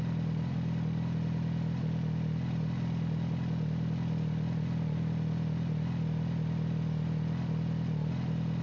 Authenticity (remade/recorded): recorded